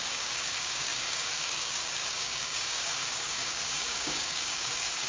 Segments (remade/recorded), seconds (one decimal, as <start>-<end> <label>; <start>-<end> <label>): 0.0-5.1 remade